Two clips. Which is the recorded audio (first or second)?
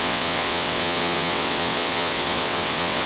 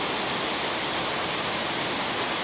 second